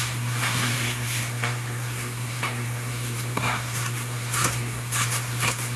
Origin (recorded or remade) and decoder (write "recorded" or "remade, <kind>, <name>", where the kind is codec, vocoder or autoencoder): remade, codec, SNAC